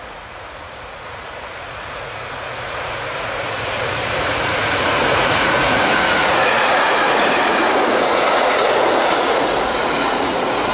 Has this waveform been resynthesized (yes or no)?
yes